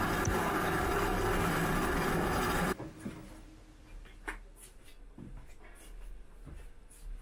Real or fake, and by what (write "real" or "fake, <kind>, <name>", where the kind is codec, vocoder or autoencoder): real